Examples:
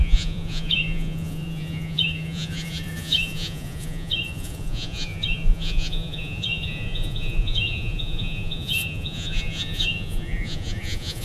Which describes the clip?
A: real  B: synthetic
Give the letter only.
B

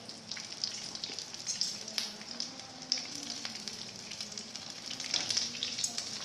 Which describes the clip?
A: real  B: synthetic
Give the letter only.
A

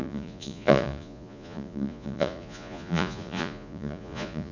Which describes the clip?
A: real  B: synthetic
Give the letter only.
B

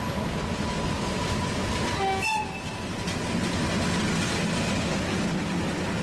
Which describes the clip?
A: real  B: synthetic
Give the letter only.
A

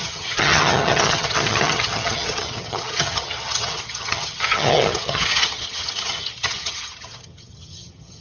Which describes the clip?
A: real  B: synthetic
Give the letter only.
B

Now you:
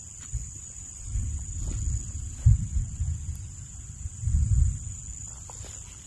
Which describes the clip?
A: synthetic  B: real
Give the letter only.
B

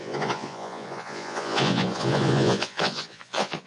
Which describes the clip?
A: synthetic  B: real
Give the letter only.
A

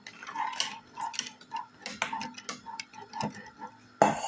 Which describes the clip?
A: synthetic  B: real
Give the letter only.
B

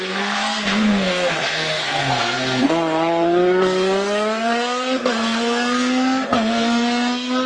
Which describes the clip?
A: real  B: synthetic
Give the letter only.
B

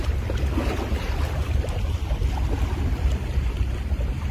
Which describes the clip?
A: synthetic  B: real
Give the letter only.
A